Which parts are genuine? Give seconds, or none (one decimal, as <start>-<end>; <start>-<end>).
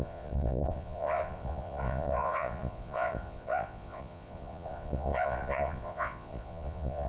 none